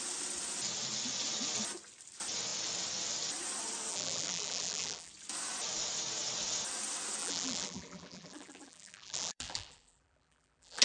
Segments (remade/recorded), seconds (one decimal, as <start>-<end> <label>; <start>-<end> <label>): 0.0-3.9 recorded; 3.9-5.1 remade; 5.1-7.2 recorded; 7.2-10.8 remade